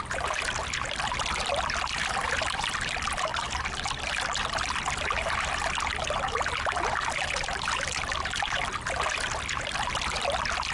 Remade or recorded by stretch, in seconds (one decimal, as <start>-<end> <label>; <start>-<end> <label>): 0.0-10.7 recorded

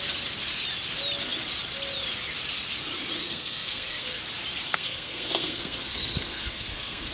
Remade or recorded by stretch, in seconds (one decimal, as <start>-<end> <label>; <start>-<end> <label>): 0.0-3.2 recorded; 3.2-4.2 remade; 4.2-4.7 recorded; 4.7-7.1 remade

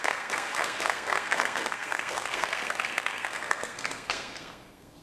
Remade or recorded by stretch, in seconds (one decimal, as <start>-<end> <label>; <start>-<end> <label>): 0.0-5.0 remade

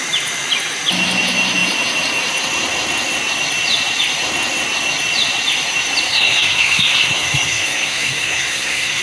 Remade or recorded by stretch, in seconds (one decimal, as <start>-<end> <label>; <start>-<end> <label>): 0.0-6.1 recorded; 6.1-9.0 remade